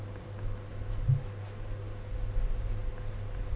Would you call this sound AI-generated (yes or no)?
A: no